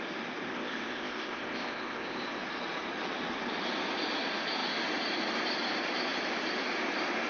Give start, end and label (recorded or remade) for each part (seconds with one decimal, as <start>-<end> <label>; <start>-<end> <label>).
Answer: 0.0-0.5 recorded; 0.5-2.2 remade; 2.2-7.3 recorded